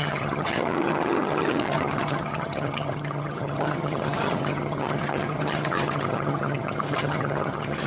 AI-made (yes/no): yes